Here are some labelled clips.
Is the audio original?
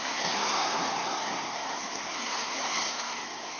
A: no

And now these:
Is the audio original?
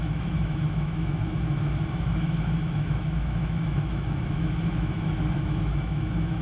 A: no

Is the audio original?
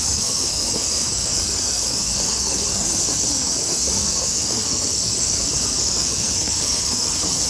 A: no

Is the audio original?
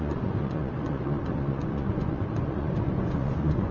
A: no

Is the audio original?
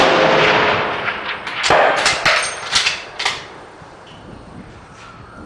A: yes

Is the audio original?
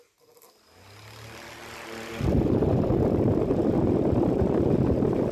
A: yes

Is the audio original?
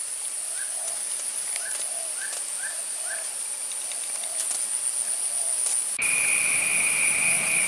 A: yes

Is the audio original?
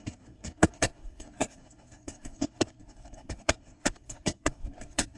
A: no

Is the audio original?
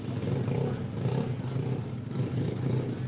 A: yes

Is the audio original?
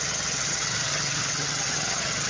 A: no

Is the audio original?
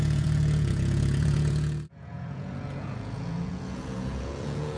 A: no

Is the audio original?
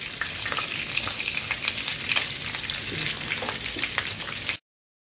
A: yes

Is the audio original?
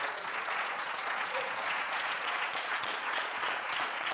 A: no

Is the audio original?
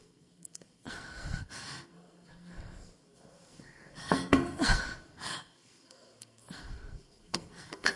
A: no